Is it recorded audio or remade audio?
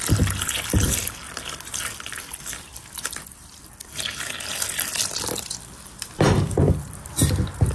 recorded